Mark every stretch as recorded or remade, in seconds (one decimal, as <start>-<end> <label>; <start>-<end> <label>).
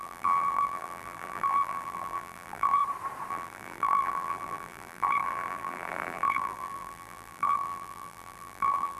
0.0-2.8 remade; 2.8-3.3 recorded; 3.3-9.0 remade